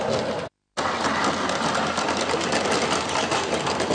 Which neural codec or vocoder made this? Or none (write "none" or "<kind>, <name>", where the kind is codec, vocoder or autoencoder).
none